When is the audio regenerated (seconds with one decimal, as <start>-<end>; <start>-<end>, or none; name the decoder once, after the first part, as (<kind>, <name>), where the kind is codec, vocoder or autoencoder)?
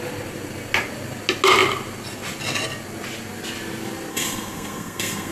4.1-5.3 (codec, SNAC)